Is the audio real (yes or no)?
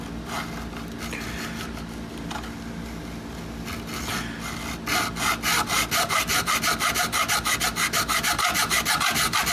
yes